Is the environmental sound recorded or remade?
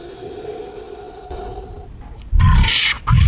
recorded